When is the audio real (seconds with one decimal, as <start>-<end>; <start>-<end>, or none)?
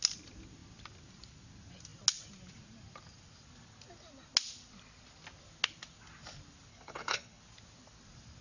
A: 0.0-6.7; 7.4-8.4